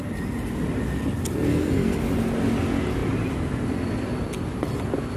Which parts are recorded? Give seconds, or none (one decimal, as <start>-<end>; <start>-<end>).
0.0-1.5; 2.0-5.2